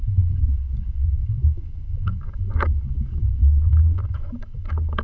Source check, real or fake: fake